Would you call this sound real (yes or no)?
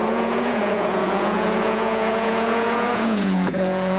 no